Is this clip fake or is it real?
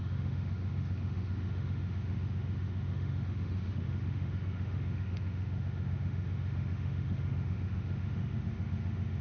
fake